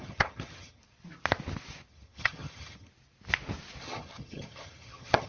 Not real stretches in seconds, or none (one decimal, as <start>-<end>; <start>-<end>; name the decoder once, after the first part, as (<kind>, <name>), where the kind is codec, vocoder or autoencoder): 0.0-0.8 (vocoder, HiFi-GAN); 1.9-2.9; 3.8-5.3

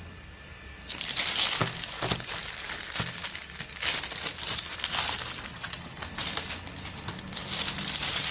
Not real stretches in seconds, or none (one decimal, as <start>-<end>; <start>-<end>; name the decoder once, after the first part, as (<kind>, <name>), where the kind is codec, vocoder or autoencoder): 5.5-6.0 (vocoder, HiFi-GAN)

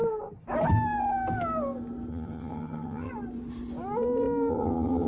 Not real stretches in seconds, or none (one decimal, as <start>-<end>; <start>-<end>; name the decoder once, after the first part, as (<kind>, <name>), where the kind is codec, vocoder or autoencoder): 2.1-3.1 (vocoder, HiFi-GAN); 4.5-5.1

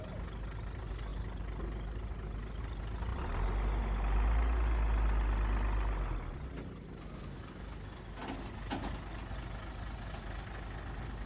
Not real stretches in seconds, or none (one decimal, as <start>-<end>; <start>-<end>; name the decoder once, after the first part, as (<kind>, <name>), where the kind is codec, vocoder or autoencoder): none

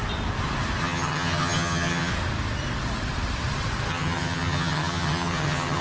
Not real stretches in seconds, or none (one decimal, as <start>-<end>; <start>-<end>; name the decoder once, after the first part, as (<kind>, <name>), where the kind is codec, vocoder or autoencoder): 0.8-2.1 (vocoder, HiFi-GAN); 3.9-5.8

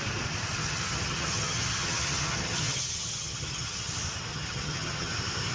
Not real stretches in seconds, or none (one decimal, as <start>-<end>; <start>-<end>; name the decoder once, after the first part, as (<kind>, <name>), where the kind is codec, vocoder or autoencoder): 0.6-3.9 (vocoder, HiFi-GAN); 4.3-5.1

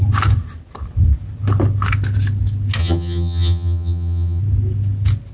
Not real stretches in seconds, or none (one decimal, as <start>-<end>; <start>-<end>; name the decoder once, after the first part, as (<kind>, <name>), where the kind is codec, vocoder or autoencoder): 2.8-4.4 (vocoder, HiFi-GAN)